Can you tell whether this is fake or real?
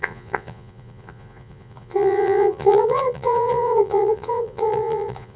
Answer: fake